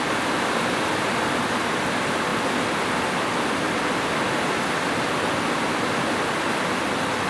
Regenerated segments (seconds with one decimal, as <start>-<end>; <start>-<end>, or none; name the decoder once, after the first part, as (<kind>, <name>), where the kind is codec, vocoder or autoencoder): none